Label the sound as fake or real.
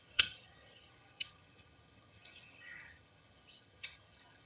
fake